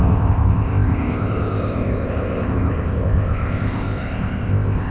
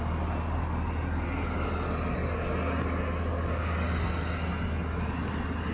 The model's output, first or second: first